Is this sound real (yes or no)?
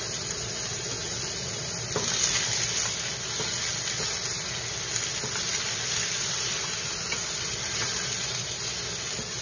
yes